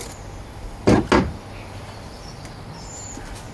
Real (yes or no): yes